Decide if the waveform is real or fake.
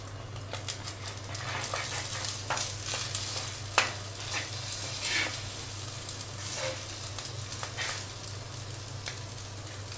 real